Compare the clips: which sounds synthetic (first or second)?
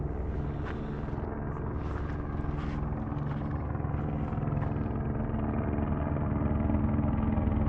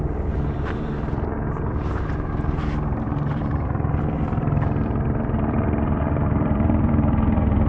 second